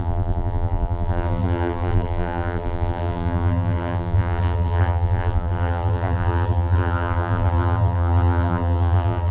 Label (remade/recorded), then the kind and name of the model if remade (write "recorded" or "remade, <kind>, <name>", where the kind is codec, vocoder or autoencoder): remade, vocoder, BigVGAN v2